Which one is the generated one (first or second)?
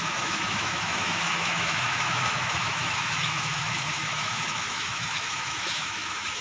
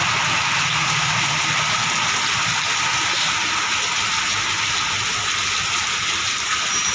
first